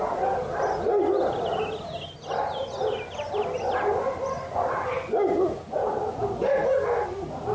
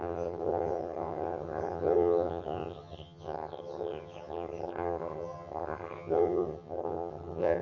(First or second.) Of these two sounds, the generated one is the second